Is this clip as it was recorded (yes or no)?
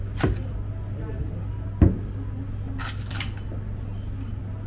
yes